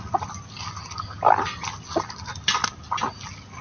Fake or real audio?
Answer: real